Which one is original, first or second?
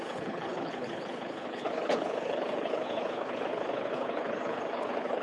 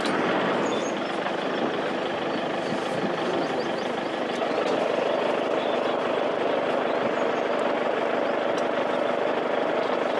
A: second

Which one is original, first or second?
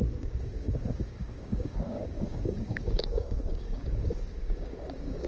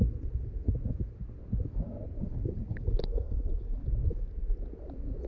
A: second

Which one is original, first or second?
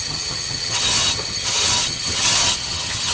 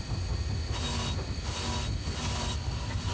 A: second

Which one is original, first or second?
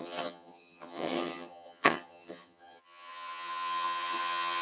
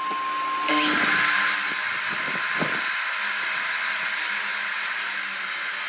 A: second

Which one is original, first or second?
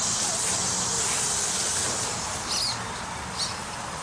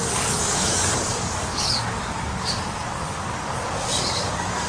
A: first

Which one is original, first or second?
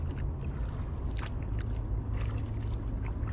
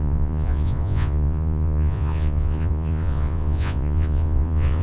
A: first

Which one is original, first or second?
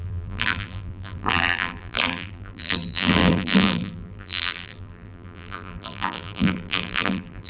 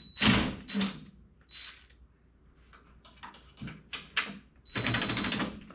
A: second